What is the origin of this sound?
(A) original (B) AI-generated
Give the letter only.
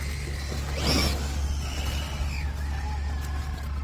A